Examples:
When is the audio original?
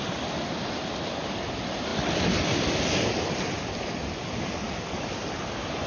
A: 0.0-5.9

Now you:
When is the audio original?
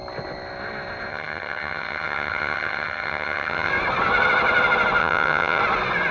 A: 0.0-1.1; 3.7-5.0; 5.6-6.1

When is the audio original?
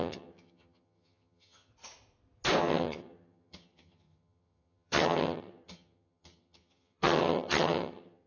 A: 1.7-2.6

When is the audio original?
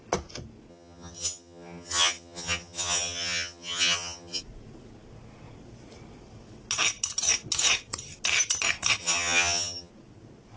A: 0.0-0.7; 4.4-9.0; 9.9-10.6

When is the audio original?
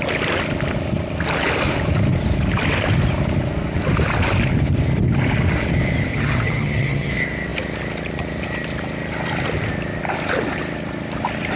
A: 0.0-6.1; 7.1-11.6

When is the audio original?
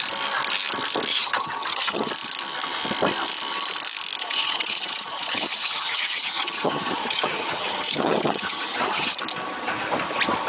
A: 0.0-1.1; 2.1-4.2; 9.2-10.5